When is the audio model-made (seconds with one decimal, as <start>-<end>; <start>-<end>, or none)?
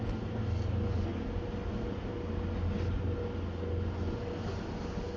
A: none